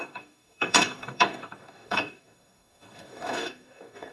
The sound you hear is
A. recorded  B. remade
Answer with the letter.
B